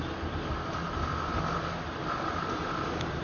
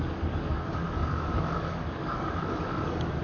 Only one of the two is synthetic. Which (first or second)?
second